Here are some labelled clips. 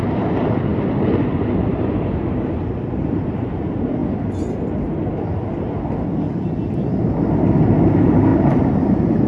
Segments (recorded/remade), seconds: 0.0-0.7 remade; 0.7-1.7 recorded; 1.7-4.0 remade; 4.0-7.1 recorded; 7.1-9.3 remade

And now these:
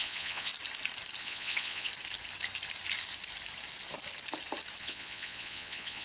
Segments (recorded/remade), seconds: 0.0-0.5 remade; 0.5-1.2 recorded; 1.2-1.9 remade; 1.9-4.8 recorded; 4.8-6.0 remade

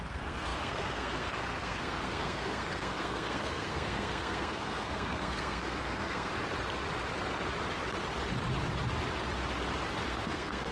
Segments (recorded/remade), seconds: 0.0-6.3 remade; 6.3-10.1 recorded; 10.1-10.7 remade

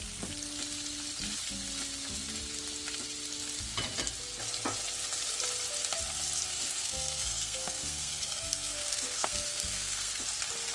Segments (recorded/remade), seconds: 0.0-6.5 recorded; 6.5-10.2 remade; 10.2-10.7 recorded

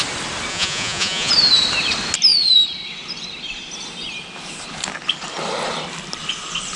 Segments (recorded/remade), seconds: 0.0-0.5 recorded; 0.5-1.3 remade; 1.3-6.8 recorded

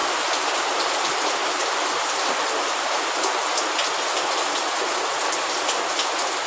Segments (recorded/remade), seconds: 0.0-0.9 remade; 0.9-1.4 recorded; 1.4-3.2 remade; 3.2-6.5 recorded

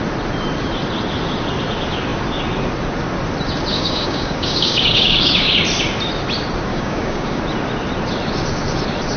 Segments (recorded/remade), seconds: 0.0-3.7 recorded; 3.7-5.6 remade; 5.6-6.7 recorded; 6.7-7.4 remade; 7.4-9.2 recorded